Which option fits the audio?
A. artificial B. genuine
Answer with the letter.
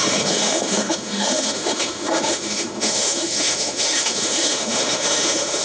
A